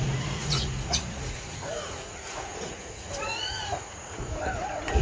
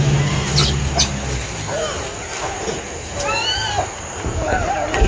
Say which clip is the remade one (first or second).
first